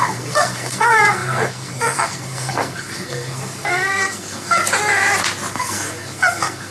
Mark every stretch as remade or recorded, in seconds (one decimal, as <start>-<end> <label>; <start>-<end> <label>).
0.0-4.6 remade; 4.6-5.5 recorded; 5.5-6.7 remade